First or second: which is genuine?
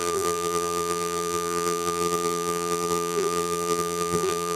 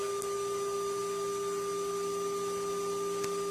second